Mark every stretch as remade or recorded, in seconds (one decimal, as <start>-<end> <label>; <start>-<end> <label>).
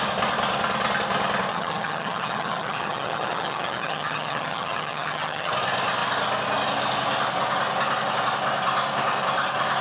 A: 0.0-1.5 recorded; 1.5-5.5 remade; 5.5-9.8 recorded